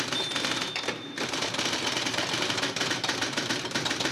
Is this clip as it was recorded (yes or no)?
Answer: no